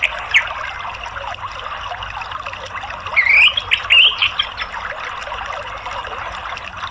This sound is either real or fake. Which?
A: real